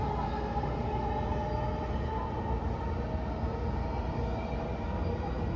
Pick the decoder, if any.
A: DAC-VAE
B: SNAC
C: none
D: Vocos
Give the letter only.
C